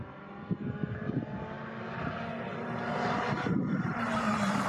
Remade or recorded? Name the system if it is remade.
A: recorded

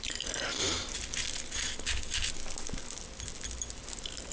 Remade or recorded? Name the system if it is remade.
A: recorded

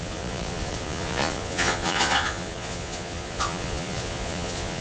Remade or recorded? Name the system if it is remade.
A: remade, vocoder, Vocos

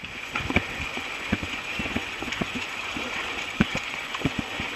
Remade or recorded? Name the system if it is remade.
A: remade, vocoder, Vocos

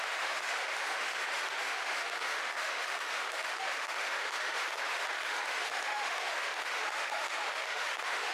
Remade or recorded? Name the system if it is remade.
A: remade, autoencoder, DAC-VAE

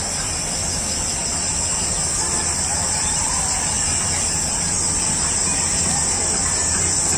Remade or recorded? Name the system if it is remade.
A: remade, vocoder, BigVGAN v2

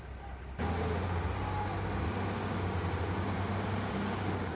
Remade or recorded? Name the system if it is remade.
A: recorded